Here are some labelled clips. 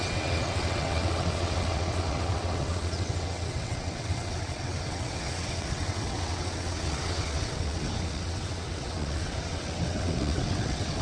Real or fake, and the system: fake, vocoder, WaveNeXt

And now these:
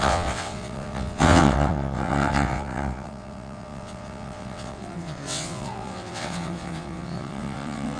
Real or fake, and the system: fake, vocoder, WaveNeXt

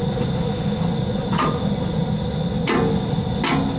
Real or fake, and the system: real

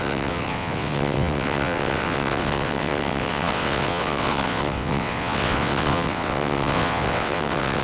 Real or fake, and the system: fake, vocoder, WaveNeXt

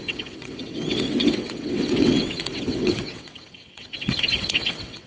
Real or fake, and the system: fake, vocoder, WaveNeXt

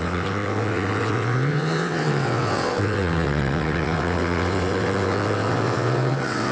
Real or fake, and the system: fake, vocoder, WaveNeXt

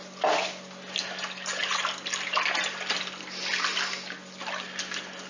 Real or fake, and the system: real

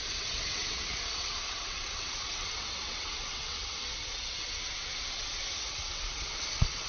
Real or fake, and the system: fake, vocoder, WaveNeXt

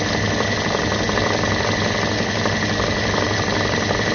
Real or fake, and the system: real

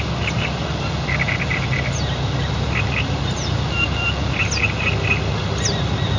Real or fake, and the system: real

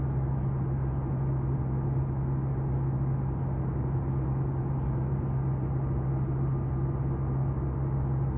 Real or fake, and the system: real